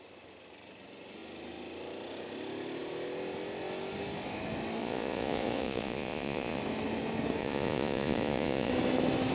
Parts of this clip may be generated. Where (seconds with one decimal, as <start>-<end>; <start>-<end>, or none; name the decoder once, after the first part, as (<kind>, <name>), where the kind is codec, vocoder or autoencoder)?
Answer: 4.8-6.6 (vocoder, Vocos); 7.4-8.7